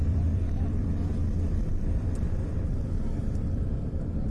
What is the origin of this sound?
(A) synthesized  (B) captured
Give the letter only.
A